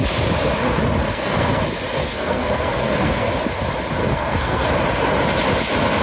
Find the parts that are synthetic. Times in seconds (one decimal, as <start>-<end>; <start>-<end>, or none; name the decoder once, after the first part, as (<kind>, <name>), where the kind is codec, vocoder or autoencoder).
1.0-1.6 (codec, SNAC); 2.0-3.3; 4.0-4.7